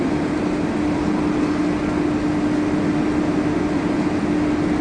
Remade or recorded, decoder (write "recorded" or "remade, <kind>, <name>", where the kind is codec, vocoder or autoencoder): recorded